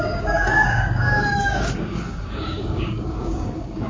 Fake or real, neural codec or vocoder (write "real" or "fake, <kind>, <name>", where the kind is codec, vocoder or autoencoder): fake, codec, DAC